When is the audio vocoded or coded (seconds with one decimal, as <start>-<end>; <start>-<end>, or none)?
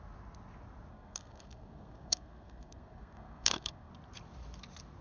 0.9-3.9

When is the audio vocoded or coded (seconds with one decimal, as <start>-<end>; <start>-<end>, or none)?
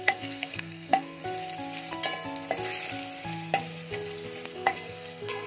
0.0-1.2; 4.5-5.5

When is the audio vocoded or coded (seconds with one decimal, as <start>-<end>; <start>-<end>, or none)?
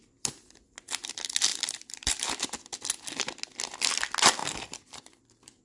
1.5-2.4; 4.4-5.6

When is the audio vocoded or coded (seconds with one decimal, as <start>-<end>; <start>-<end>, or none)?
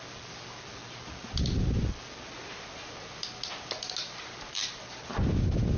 none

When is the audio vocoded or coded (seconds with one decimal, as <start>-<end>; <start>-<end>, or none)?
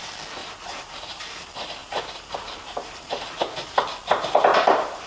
0.4-1.2; 1.8-3.1; 4.5-5.1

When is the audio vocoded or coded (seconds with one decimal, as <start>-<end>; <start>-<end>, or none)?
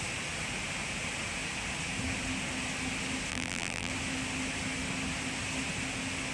3.3-3.9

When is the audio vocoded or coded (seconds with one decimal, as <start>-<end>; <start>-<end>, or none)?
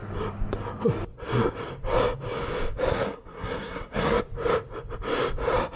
2.9-4.2